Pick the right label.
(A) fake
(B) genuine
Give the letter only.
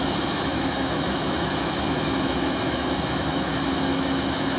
A